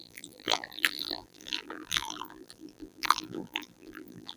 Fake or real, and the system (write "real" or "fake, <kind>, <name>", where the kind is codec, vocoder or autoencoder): fake, vocoder, BigVGAN v2